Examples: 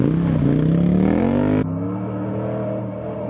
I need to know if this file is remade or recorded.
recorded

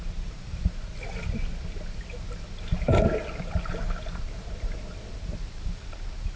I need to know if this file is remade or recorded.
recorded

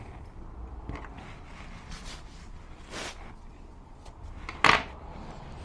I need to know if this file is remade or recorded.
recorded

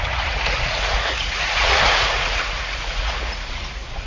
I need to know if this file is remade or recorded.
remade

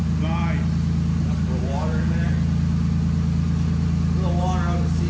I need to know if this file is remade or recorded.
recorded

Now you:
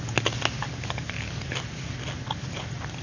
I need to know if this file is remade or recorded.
recorded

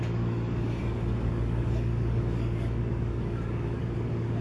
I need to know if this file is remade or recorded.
remade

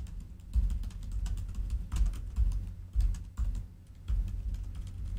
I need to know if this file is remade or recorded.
recorded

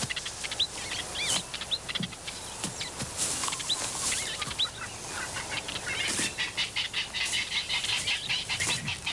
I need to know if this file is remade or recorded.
recorded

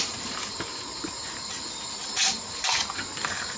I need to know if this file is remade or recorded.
recorded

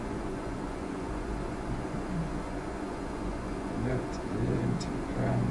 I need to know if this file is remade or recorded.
remade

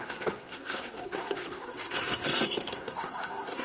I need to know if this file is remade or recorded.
remade